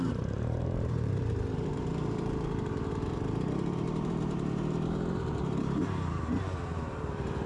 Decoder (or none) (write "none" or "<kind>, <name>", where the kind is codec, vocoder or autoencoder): vocoder, BigVGAN v2